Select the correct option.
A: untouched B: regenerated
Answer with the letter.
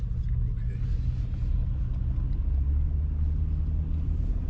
A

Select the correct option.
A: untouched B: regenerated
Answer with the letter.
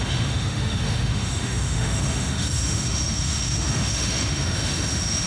B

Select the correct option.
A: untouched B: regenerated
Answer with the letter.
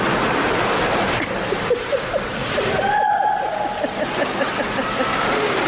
B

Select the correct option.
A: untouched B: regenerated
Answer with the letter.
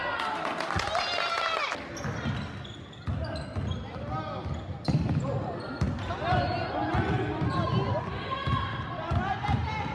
A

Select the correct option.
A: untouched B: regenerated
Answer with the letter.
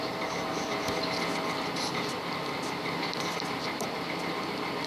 A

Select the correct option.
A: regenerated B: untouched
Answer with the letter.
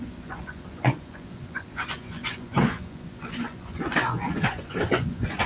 A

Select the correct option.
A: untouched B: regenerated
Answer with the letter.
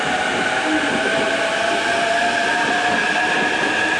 A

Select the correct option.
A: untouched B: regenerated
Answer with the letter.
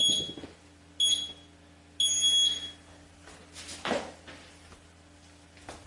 A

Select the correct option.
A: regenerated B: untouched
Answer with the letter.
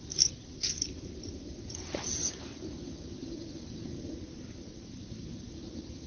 A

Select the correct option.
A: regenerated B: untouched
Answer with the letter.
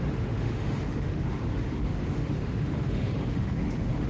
A